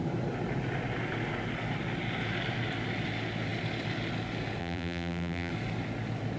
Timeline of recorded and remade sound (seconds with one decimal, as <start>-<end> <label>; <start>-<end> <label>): 0.0-4.6 recorded; 4.6-5.5 remade; 5.5-6.4 recorded